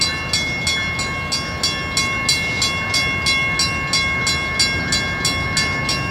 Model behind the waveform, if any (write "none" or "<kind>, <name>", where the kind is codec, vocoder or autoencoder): none